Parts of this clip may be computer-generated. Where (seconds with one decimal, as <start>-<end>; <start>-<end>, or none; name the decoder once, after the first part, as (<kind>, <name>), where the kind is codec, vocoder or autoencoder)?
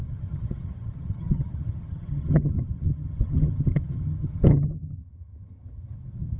0.0-6.4 (vocoder, HiFi-GAN)